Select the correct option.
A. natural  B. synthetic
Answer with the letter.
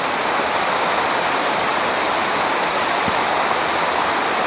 A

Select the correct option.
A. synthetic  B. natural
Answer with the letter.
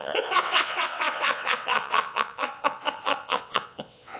A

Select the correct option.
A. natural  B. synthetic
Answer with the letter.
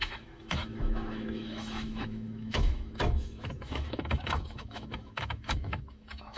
B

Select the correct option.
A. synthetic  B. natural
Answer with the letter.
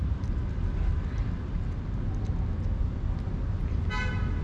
B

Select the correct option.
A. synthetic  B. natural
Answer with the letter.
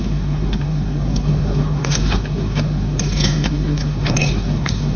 A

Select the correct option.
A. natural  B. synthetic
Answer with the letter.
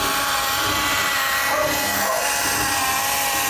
A